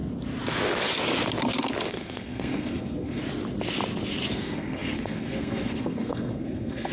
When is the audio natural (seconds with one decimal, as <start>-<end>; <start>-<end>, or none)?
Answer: 0.0-1.9; 3.2-4.3